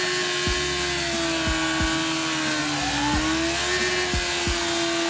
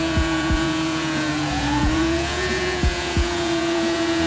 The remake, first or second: second